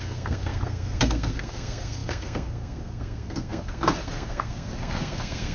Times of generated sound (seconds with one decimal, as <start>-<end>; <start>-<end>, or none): 0.0-5.5